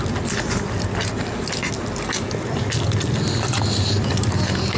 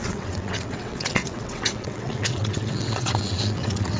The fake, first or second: second